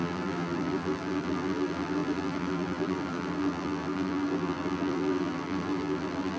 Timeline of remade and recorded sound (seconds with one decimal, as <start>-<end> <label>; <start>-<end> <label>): 0.0-6.4 remade